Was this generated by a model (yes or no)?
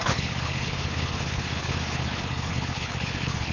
yes